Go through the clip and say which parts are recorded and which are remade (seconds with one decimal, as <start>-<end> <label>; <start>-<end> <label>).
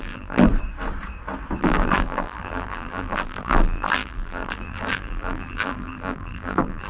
0.0-0.5 remade; 0.5-1.6 recorded; 1.6-6.9 remade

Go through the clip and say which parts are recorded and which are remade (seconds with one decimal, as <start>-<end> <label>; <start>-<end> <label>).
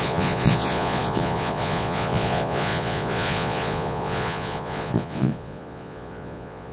0.0-6.7 remade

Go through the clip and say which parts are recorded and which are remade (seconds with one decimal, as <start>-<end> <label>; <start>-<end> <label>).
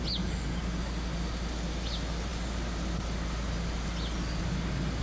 0.0-5.0 recorded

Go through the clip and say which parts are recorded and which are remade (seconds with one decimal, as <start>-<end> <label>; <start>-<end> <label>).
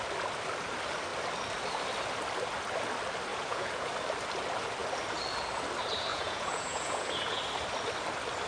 0.0-3.3 recorded; 3.3-3.9 remade; 3.9-6.1 recorded; 6.1-7.4 remade; 7.4-8.5 recorded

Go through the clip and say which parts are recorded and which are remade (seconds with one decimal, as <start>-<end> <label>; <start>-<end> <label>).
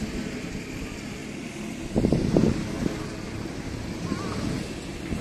0.0-1.2 recorded; 1.2-3.7 remade; 3.7-5.2 recorded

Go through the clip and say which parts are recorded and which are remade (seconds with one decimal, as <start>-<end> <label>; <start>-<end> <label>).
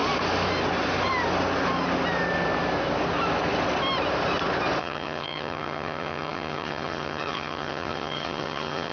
0.0-4.8 recorded; 4.8-8.9 remade